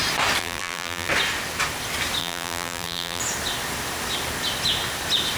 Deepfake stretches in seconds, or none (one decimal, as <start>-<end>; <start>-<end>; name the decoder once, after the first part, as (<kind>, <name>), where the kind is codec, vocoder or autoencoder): 0.4-1.1 (vocoder, BigVGAN v2); 2.2-3.2